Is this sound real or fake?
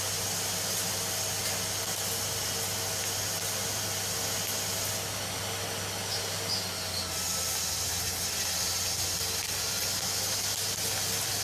real